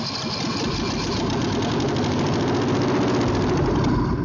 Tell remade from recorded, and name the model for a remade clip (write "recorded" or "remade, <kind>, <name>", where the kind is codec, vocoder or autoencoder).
recorded